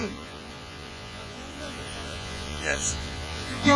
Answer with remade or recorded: remade